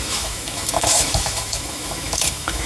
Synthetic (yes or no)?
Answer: yes